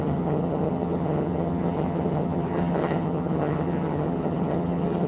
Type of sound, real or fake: fake